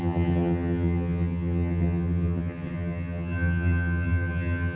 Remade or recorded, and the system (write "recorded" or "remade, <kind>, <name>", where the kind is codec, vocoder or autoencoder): remade, vocoder, HiFi-GAN